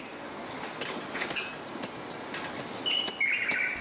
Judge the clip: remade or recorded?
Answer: recorded